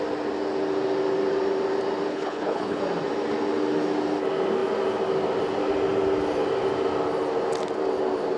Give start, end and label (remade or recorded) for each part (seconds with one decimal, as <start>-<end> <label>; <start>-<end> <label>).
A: 0.0-2.1 recorded; 2.1-2.8 remade; 2.8-8.4 recorded